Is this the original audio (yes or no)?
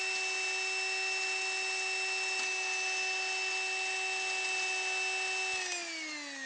yes